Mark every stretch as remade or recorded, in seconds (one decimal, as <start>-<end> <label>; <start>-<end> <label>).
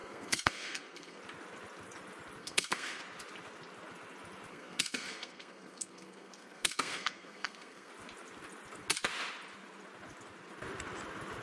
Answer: 0.0-1.2 remade; 1.2-2.4 recorded; 2.4-3.0 remade; 3.0-4.5 recorded; 4.5-7.9 remade; 7.9-11.4 recorded